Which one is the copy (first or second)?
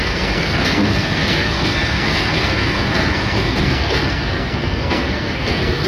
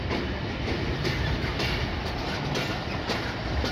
first